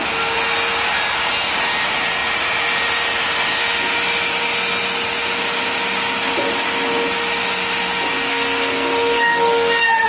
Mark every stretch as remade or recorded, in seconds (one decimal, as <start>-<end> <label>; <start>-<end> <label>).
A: 0.0-8.3 recorded; 8.3-10.1 remade